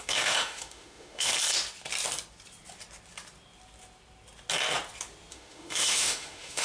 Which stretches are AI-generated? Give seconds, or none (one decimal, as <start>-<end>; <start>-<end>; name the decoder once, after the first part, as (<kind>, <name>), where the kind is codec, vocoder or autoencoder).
0.0-1.3 (autoencoder, DAC-VAE); 5.3-6.6